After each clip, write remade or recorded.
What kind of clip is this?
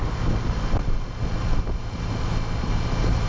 recorded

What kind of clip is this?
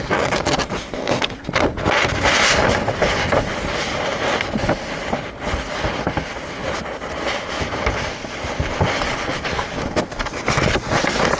recorded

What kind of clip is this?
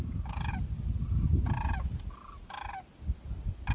recorded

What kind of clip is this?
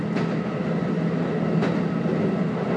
recorded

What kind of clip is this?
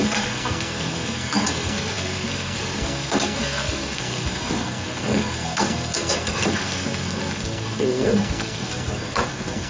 remade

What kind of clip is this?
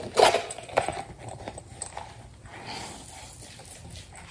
recorded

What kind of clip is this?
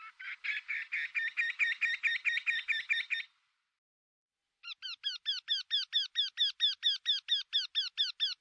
recorded